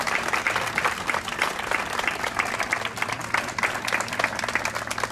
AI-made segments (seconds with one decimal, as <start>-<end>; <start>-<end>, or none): none